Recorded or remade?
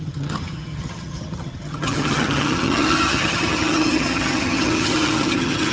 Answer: remade